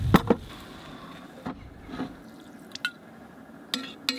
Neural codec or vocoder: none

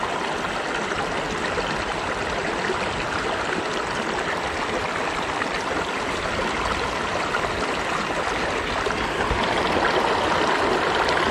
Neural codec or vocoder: none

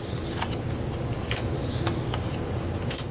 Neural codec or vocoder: none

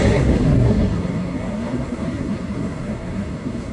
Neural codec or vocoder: codec, SNAC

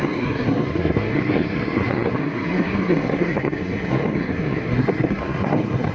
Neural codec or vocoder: codec, SNAC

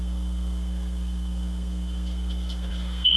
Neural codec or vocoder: codec, SNAC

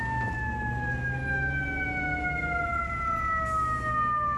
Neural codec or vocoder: none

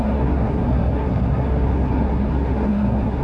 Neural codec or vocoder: codec, SNAC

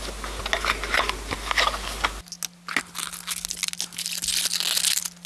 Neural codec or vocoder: none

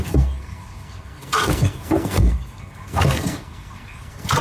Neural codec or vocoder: codec, SNAC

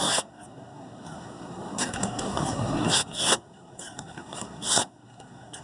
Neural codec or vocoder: codec, SNAC